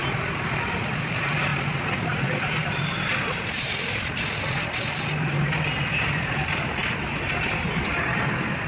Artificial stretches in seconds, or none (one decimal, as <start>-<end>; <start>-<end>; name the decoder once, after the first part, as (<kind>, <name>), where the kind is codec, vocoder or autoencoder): none